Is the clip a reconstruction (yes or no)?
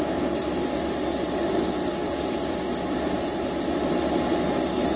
no